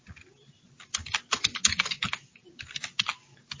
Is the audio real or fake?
real